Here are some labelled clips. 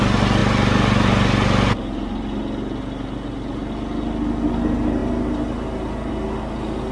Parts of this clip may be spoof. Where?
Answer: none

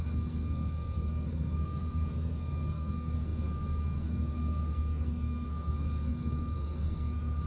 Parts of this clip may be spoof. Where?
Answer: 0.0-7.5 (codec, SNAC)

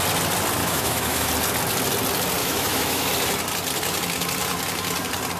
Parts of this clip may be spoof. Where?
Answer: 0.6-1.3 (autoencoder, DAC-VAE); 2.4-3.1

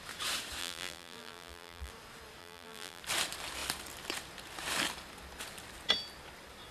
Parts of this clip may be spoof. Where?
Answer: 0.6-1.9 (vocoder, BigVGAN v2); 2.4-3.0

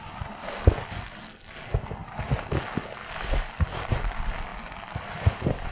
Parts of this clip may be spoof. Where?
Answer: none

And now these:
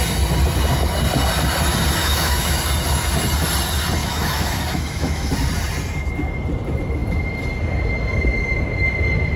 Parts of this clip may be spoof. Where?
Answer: 2.0-2.6 (autoencoder, DAC-VAE); 4.0-5.3

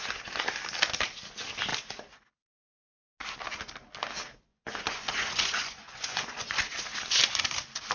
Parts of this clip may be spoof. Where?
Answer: 4.5-6.6 (vocoder, Vocos)

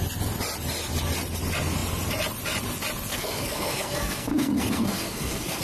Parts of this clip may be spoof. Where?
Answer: 3.1-5.6 (codec, SNAC)